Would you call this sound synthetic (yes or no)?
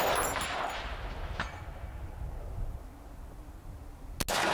no